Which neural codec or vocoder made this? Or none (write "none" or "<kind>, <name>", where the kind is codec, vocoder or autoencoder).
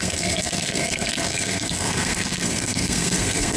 codec, SNAC